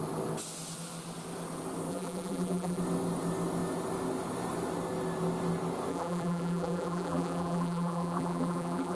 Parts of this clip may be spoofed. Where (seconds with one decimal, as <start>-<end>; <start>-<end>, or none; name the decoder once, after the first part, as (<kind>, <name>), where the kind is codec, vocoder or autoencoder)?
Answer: 1.9-2.8 (vocoder, BigVGAN v2); 5.9-9.0